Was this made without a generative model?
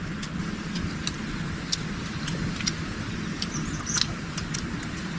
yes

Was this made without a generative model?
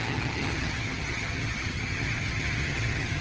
no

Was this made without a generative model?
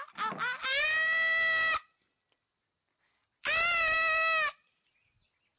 yes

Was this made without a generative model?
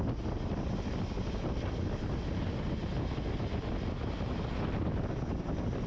yes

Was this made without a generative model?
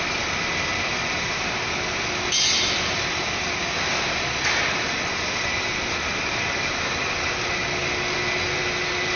yes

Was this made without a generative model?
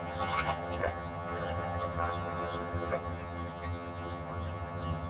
no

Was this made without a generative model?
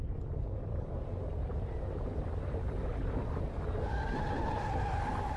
no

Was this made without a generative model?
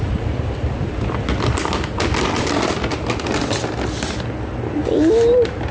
yes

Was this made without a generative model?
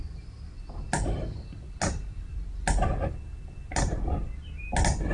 yes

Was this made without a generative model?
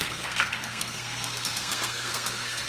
no